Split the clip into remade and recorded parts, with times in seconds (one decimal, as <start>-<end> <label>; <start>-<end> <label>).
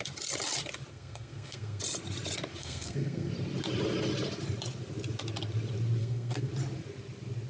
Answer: 0.0-0.9 recorded; 0.9-1.8 remade; 1.8-2.6 recorded; 2.6-3.3 remade; 3.3-6.0 recorded; 6.0-6.5 remade; 6.5-7.5 recorded